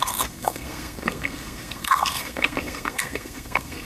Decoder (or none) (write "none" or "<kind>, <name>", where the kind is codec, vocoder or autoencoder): codec, SNAC